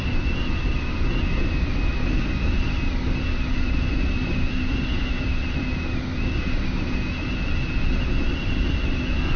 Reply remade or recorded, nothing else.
recorded